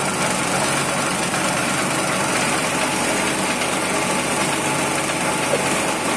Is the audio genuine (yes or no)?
yes